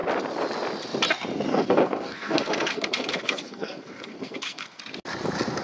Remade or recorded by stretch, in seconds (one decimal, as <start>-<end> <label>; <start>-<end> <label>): 0.0-1.5 recorded; 1.5-4.8 remade; 4.8-5.6 recorded